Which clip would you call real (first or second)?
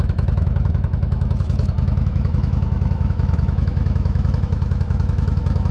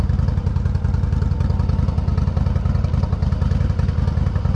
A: second